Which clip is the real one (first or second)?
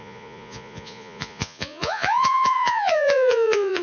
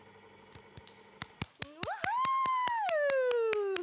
second